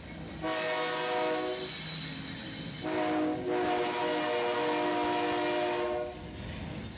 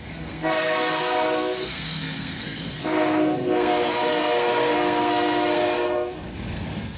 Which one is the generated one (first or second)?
second